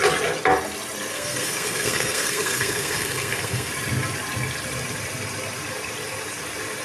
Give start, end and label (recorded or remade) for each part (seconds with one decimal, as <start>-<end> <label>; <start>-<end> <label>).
0.0-1.1 recorded; 1.1-3.7 remade; 3.7-6.8 recorded